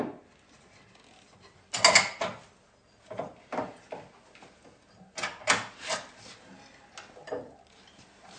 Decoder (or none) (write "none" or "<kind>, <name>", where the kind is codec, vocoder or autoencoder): none